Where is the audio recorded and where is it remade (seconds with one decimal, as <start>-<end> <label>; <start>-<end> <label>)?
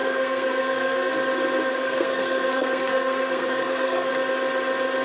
0.0-1.1 remade; 1.1-1.7 recorded; 1.7-4.1 remade; 4.1-5.0 recorded